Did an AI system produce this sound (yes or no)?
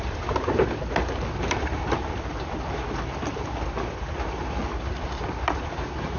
yes